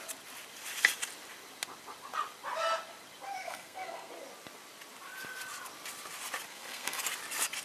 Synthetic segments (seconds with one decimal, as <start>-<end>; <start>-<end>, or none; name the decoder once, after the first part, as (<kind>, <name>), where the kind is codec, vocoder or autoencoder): 3.4-4.1 (codec, SNAC); 6.5-7.0